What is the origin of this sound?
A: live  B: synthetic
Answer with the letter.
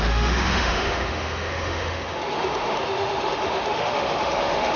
B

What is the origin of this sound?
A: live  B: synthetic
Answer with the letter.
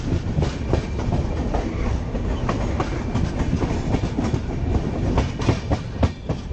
A